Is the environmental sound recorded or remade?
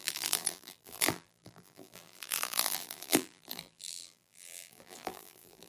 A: remade